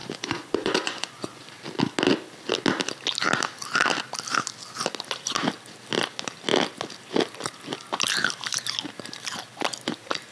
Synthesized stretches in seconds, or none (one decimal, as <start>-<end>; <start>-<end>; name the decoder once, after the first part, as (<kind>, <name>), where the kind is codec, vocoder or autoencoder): 0.0-1.4 (vocoder, Vocos)

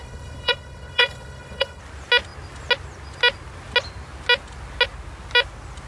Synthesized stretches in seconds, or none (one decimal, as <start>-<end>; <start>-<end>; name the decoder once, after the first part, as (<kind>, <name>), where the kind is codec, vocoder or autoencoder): 0.0-1.8 (codec, HILCodec)

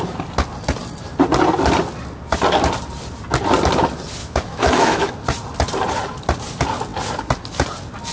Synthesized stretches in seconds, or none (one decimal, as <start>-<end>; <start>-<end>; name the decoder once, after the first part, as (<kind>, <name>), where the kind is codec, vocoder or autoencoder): 4.2-5.1 (autoencoder, DAC-VAE)